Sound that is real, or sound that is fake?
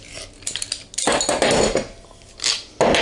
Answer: real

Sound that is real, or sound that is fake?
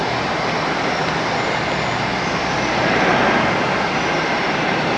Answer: real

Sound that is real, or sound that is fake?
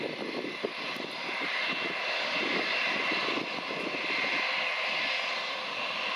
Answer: real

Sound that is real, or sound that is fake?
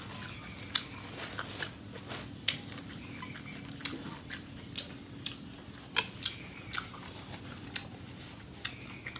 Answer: real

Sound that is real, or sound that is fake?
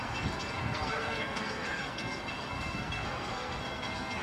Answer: fake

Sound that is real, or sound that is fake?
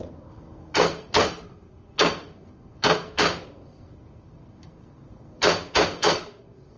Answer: fake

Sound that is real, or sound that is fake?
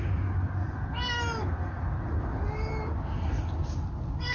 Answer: real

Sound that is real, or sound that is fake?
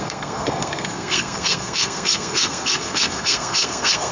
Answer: fake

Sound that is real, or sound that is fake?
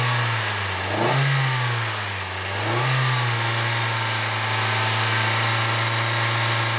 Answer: real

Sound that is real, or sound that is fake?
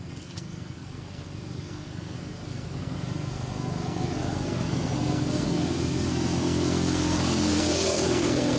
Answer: fake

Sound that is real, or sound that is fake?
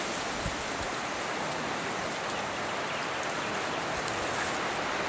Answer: real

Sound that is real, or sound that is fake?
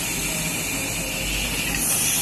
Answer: real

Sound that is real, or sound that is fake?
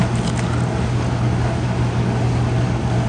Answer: real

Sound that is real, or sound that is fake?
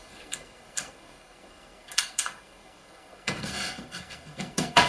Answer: fake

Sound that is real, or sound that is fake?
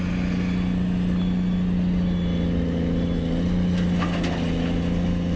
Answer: real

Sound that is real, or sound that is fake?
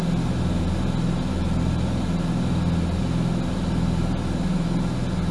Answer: real